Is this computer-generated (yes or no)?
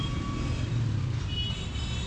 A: no